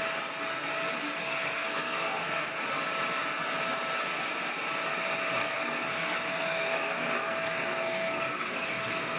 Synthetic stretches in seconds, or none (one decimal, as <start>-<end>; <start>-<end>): 1.2-2.6; 5.4-9.2